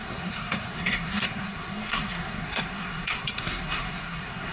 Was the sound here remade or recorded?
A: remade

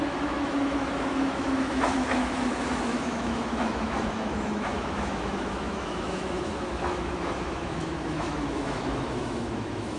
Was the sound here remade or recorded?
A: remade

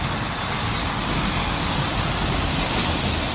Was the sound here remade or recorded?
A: recorded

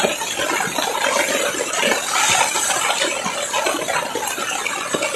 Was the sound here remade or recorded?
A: recorded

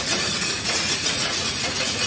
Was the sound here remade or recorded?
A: remade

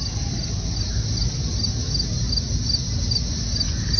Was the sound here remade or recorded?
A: recorded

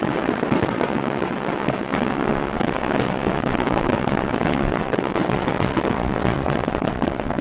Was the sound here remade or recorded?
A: remade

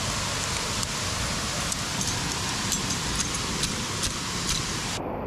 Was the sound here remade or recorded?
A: recorded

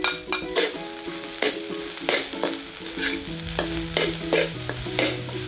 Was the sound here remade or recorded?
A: recorded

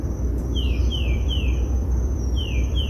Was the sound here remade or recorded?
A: remade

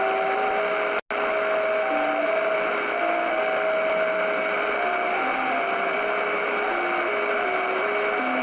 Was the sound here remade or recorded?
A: recorded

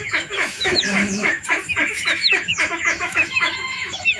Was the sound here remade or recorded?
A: remade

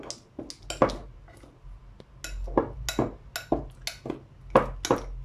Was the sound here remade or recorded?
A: recorded